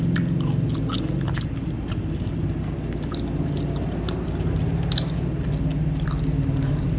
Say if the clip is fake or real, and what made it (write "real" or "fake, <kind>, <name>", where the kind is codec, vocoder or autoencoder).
real